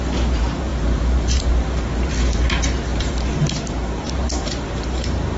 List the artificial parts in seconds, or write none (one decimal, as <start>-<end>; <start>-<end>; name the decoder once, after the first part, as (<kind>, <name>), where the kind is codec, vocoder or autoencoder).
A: 0.0-5.4 (vocoder, BigVGAN v2)